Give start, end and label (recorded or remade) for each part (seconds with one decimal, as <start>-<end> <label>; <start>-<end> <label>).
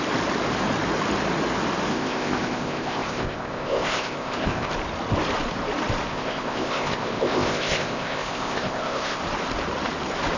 0.0-1.9 recorded; 1.9-4.7 remade; 4.7-6.1 recorded; 6.1-9.2 remade; 9.2-10.4 recorded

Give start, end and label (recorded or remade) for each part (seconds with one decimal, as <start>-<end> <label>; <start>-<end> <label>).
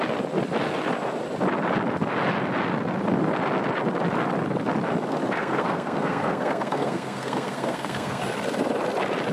0.0-5.4 recorded; 5.4-8.2 remade; 8.2-9.3 recorded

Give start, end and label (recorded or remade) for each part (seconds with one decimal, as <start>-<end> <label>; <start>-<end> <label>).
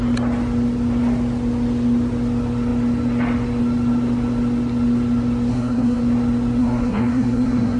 0.0-5.5 recorded; 5.5-6.0 remade; 6.0-6.6 recorded; 6.6-7.8 remade